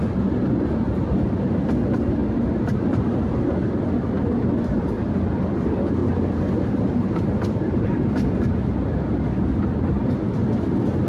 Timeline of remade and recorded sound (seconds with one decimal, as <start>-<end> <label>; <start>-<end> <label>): 0.0-6.0 recorded; 6.0-8.7 remade; 8.7-11.1 recorded